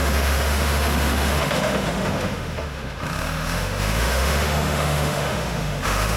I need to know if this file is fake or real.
fake